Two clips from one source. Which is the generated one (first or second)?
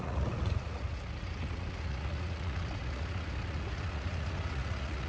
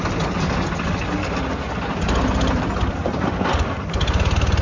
first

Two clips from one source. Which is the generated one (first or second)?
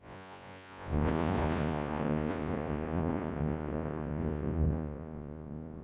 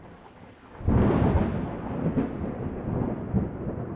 first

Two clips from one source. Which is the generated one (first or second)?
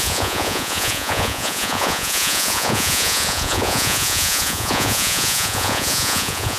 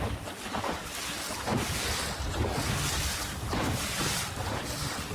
first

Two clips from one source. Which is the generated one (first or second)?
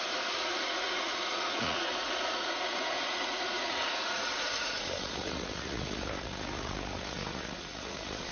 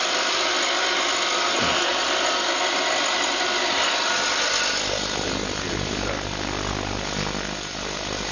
first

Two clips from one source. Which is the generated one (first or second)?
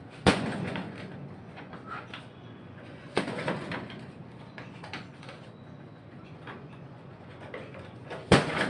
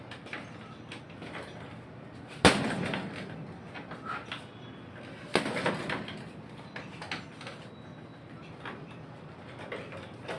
first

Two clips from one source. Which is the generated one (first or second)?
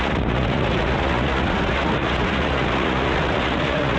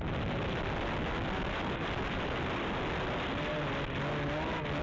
first